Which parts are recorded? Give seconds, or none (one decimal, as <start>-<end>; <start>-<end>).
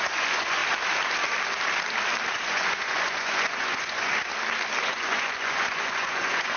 0.6-2.3; 4.3-4.9